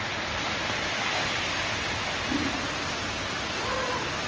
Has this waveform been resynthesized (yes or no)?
no